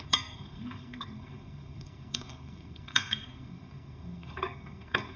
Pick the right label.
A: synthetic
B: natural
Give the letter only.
A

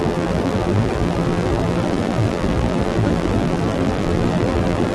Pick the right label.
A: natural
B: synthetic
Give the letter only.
B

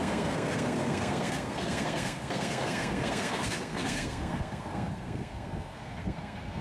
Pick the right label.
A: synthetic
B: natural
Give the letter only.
A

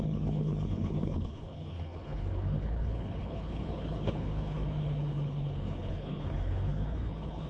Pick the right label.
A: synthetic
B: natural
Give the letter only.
A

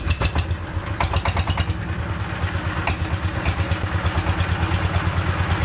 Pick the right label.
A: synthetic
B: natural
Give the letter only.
B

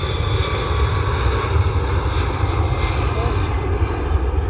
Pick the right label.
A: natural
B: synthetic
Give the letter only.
A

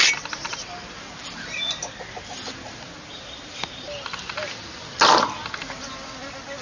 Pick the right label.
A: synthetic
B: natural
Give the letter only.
B